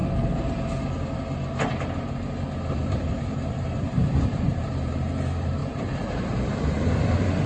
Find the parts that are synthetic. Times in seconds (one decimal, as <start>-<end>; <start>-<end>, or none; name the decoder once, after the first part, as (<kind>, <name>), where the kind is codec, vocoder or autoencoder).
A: 2.7-7.5 (vocoder, BigVGAN v2)